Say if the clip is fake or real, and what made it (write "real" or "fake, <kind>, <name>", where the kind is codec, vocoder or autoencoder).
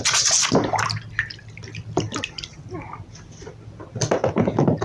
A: real